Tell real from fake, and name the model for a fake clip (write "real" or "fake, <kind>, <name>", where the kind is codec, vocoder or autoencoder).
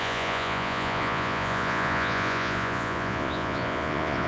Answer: fake, vocoder, Vocos